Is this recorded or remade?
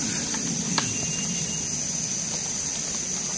recorded